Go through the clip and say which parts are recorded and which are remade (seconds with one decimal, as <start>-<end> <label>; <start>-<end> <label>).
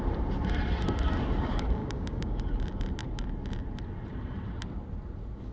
0.0-1.8 recorded; 1.8-2.4 remade; 2.4-5.5 recorded